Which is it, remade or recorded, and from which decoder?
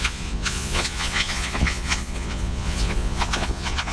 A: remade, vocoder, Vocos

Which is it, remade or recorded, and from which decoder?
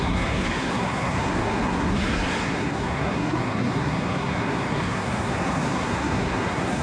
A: remade, codec, SNAC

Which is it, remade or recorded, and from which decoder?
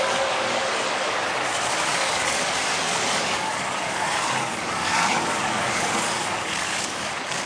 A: remade, codec, DAC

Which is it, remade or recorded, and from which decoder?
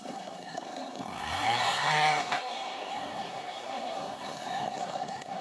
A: remade, codec, SNAC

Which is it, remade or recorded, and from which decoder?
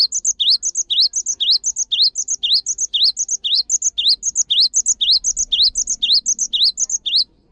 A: recorded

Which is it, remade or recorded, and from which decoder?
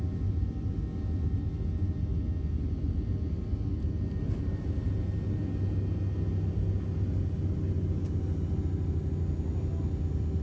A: recorded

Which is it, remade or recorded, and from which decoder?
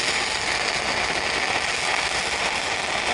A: recorded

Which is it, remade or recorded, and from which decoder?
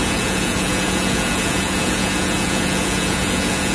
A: remade, vocoder, Vocos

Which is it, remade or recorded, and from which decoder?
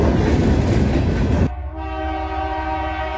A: recorded